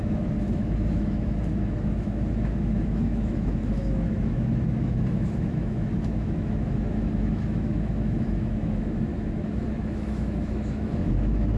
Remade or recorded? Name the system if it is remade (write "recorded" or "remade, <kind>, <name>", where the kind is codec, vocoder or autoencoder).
remade, autoencoder, DAC-VAE